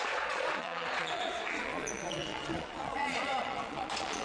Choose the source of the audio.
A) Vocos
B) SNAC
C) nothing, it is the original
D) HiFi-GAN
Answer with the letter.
A